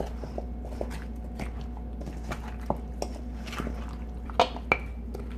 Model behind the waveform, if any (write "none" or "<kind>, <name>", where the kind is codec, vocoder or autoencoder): none